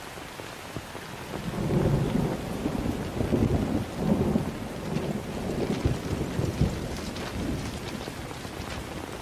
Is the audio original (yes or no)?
yes